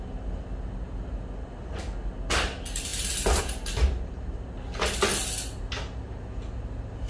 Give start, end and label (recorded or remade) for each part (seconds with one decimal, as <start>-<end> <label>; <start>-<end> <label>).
0.0-7.1 recorded